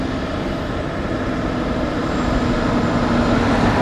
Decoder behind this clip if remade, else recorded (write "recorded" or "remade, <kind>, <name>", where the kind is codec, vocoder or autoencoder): recorded